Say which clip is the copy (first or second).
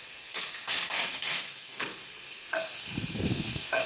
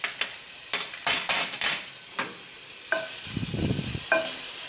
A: first